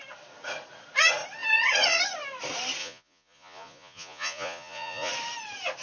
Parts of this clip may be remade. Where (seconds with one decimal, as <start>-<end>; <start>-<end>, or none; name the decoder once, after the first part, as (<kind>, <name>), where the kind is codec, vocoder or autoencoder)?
2.8-5.1 (vocoder, Vocos)